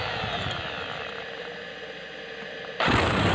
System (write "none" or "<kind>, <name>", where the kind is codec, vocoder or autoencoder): none